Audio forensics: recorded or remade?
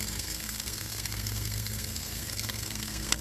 remade